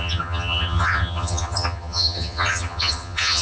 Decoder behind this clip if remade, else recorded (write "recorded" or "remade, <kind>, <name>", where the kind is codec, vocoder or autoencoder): remade, vocoder, HiFi-GAN